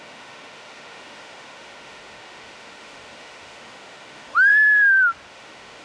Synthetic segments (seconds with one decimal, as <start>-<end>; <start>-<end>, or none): 0.0-4.5; 5.3-5.8

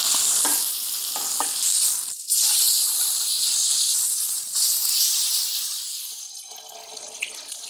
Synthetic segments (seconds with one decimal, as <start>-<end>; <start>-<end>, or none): none

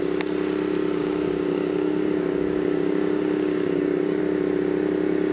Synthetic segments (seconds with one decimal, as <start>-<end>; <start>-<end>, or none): 1.0-4.2

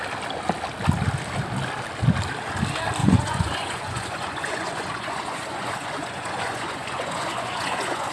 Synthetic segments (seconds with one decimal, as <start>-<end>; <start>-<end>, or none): 3.0-8.1

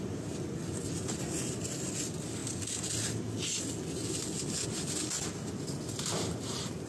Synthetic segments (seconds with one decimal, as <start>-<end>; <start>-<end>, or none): none

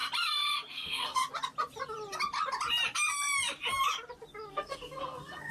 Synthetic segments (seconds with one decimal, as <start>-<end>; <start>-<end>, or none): 0.7-1.2; 4.5-5.5

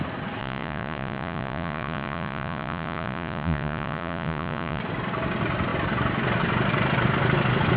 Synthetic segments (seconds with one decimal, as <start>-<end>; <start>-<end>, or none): 0.4-4.8

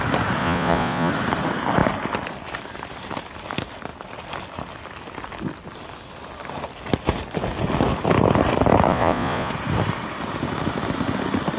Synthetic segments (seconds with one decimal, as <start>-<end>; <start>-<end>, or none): 0.4-1.1; 8.9-9.5